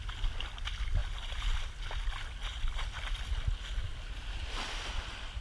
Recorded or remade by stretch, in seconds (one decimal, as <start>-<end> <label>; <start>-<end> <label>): 0.0-5.4 recorded